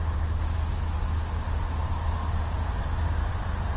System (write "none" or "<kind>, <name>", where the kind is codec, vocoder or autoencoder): none